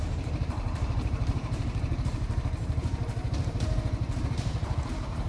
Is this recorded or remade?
remade